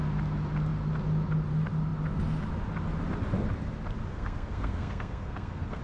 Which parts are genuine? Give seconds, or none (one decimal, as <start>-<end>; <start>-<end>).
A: 0.0-4.1